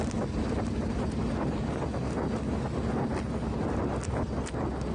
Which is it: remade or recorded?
recorded